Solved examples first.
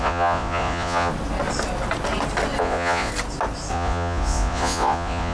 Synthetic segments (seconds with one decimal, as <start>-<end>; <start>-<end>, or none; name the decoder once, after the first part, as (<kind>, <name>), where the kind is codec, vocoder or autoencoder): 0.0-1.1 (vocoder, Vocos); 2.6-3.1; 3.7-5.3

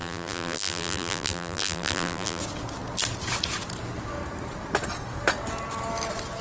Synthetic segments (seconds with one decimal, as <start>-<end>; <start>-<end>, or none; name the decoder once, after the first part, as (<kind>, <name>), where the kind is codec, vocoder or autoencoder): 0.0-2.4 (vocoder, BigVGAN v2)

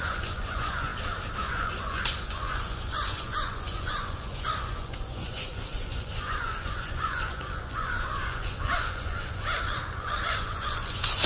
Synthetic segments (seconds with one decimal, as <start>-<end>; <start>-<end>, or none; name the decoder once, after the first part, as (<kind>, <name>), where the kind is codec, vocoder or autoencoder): 0.0-0.9 (vocoder, Vocos); 1.4-11.3

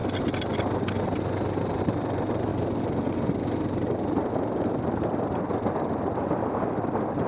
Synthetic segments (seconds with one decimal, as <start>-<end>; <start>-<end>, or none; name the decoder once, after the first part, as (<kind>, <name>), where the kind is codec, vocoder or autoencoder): 1.8-2.5 (vocoder, BigVGAN v2)

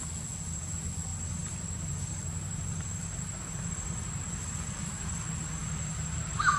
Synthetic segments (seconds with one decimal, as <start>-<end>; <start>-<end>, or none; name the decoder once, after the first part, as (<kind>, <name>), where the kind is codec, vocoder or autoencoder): 1.1-5.1 (vocoder, BigVGAN v2); 5.6-6.6